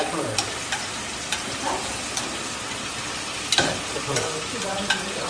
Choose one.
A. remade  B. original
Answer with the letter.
A